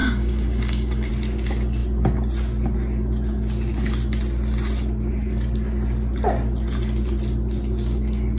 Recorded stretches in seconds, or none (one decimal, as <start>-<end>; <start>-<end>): 1.1-8.4